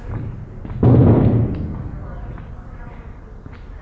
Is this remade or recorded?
recorded